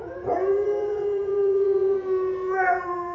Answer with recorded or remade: remade